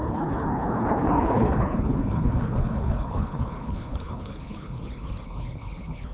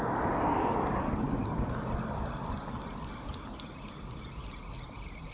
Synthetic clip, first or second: first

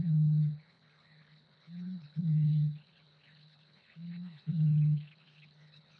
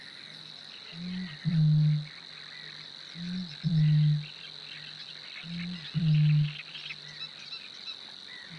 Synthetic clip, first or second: first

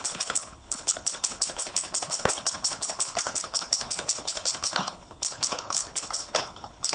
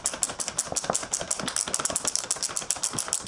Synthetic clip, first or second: first